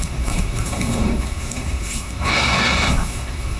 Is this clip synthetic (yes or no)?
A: yes